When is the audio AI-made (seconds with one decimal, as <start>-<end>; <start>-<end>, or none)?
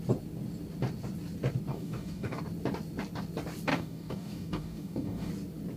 1.7-2.4; 3.7-5.3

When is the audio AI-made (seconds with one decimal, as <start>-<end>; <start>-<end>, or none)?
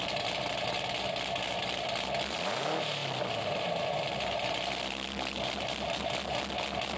none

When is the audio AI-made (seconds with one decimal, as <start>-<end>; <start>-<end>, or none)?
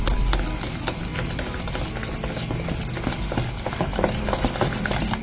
none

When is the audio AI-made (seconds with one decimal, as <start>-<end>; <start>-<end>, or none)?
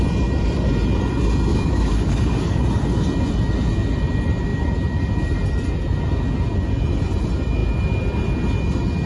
1.5-2.6